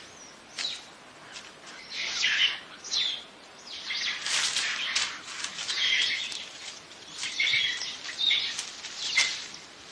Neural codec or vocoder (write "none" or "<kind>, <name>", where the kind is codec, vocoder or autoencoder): none